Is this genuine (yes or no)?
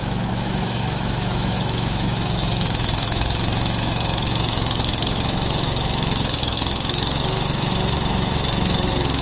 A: no